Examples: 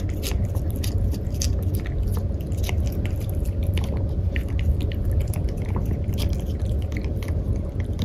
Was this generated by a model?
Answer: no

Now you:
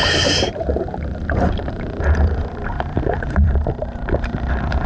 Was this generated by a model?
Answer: yes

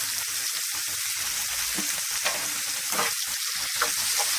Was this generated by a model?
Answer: no